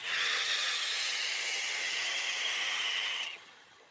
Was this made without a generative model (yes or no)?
no